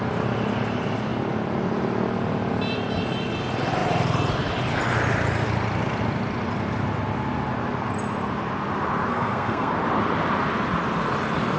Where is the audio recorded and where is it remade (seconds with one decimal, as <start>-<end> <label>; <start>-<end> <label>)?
0.0-9.1 recorded; 9.1-9.7 remade; 9.7-11.6 recorded